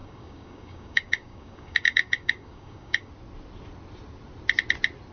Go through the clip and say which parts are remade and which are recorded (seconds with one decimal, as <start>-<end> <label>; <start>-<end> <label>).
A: 0.0-3.1 remade; 3.1-5.1 recorded